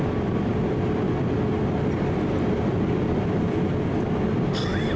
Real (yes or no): yes